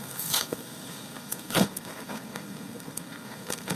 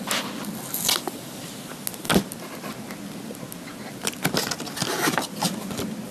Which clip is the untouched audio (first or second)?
second